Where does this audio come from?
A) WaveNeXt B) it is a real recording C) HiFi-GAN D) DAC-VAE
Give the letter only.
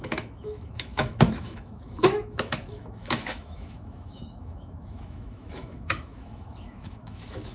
D